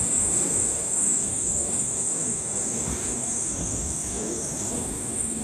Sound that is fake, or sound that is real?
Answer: fake